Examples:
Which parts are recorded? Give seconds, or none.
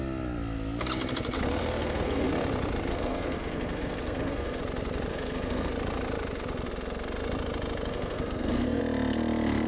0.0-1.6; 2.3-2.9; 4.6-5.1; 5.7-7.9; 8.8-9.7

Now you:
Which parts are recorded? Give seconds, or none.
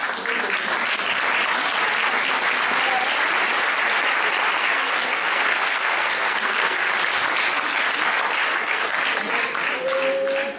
0.0-4.6; 6.9-8.5; 9.2-10.6